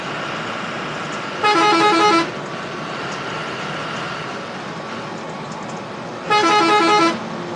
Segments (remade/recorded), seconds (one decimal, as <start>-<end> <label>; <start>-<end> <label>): 0.0-3.4 recorded; 3.4-4.7 remade; 4.7-7.6 recorded